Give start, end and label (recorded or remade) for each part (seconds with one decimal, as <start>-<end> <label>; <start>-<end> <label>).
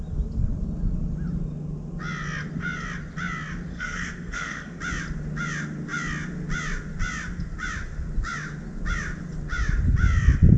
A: 0.0-3.7 recorded; 3.7-4.8 remade; 4.8-10.6 recorded